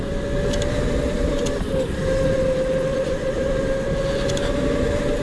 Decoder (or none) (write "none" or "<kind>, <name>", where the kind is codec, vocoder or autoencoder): none